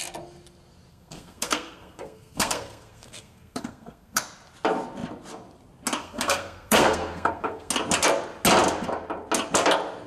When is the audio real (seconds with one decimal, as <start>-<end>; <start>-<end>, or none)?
0.0-0.9; 4.2-6.0; 7.7-10.1

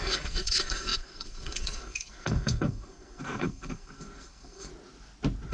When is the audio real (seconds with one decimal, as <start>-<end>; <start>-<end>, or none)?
4.7-5.5

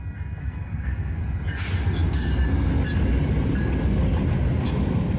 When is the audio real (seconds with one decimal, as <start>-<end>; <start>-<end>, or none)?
0.0-0.4; 1.2-5.2

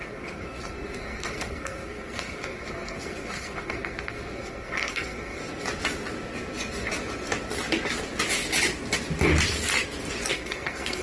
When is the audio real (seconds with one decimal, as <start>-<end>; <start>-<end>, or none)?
5.4-10.3